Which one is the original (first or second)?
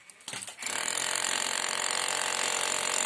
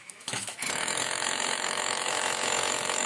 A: first